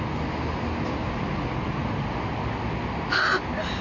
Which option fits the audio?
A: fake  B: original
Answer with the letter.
B